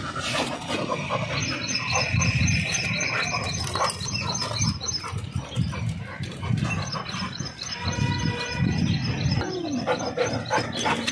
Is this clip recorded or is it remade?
recorded